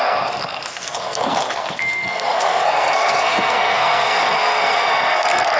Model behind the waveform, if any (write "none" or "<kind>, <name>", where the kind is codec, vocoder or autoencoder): codec, SNAC